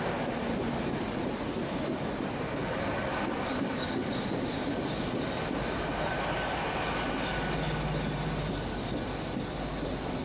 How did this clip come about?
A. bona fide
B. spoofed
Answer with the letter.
A